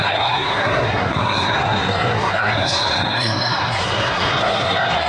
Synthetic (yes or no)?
yes